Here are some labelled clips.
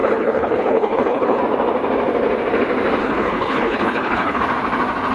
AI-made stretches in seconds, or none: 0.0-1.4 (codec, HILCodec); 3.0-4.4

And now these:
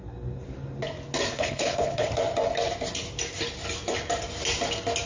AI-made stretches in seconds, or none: 1.3-2.1 (codec, HILCodec)

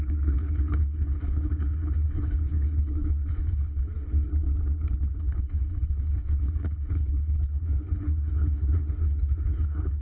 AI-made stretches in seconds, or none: 0.0-4.3 (codec, HILCodec); 5.2-10.0

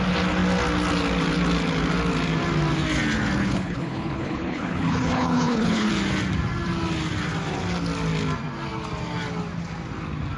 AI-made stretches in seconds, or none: 3.4-5.9 (codec, HILCodec)

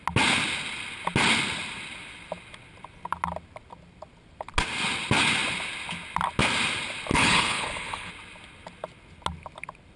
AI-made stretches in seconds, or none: 7.1-8.1 (codec, HILCodec)

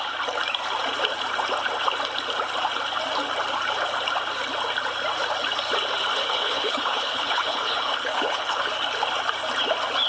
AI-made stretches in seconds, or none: 6.1-8.7 (codec, HILCodec)